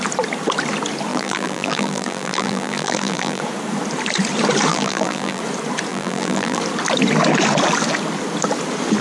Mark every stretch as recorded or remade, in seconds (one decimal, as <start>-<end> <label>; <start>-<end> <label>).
0.0-1.1 recorded; 1.1-3.4 remade; 3.4-4.7 recorded; 4.7-5.4 remade; 5.4-5.9 recorded; 5.9-6.6 remade; 6.6-9.0 recorded